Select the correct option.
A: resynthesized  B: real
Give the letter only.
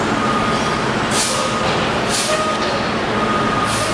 B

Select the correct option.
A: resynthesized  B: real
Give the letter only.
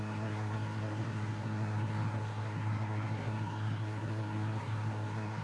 A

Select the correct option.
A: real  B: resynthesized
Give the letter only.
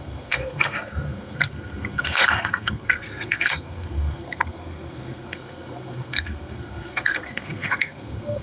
B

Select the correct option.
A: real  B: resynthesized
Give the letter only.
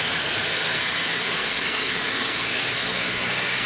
B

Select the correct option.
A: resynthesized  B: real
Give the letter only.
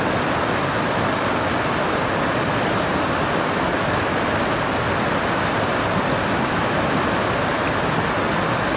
B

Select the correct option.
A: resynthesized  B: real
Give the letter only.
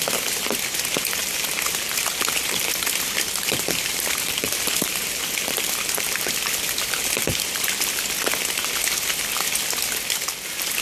B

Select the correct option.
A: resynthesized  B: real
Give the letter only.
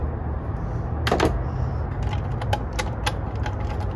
B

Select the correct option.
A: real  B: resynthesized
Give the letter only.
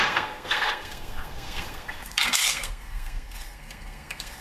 B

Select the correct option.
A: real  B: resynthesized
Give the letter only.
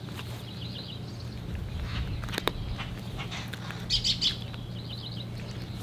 A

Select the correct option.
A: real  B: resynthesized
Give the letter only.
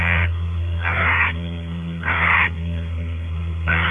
B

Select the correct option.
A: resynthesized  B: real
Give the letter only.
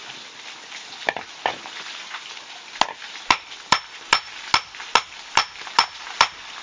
B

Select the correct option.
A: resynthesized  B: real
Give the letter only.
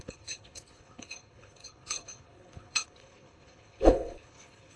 A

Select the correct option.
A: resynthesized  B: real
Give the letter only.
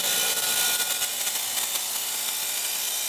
B